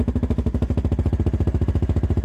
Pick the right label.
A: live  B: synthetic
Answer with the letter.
A